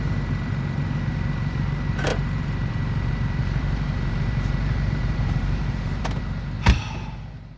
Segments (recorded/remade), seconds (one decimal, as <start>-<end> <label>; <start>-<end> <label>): 0.0-2.1 recorded; 2.1-6.2 remade; 6.2-7.6 recorded